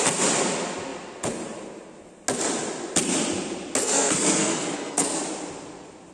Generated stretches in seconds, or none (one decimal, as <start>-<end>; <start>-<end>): 3.8-5.2